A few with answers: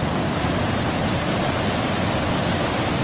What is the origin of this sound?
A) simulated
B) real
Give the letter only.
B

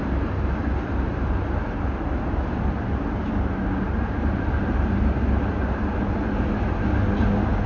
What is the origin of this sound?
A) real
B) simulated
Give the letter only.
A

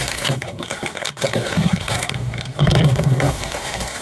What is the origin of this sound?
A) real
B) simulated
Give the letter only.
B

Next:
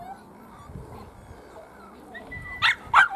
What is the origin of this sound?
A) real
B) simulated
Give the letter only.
A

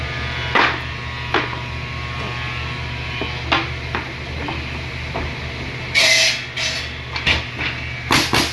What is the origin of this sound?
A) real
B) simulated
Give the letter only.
A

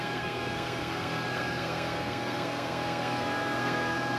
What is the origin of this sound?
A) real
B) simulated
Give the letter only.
B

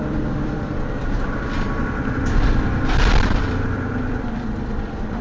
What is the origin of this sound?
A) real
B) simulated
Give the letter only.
B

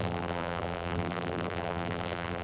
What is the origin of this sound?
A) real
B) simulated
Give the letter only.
B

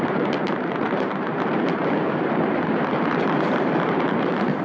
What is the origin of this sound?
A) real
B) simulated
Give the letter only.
B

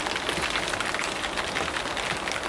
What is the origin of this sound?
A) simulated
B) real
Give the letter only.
B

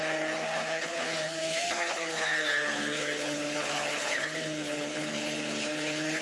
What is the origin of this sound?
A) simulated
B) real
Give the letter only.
A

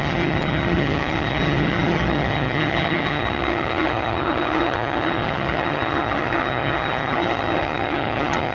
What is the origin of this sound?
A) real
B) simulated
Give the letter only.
B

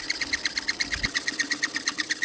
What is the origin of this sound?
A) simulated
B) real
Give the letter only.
A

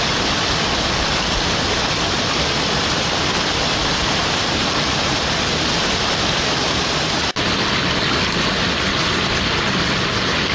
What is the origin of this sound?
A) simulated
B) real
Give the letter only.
B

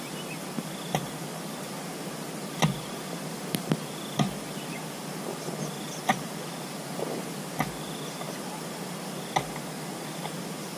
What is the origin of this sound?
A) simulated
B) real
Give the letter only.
B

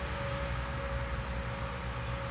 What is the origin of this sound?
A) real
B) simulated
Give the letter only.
A